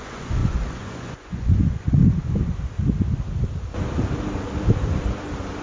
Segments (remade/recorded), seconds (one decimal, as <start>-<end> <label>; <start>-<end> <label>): 0.0-2.0 remade; 2.0-5.6 recorded